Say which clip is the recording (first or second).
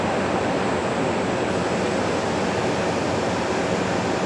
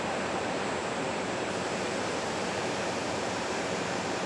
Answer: first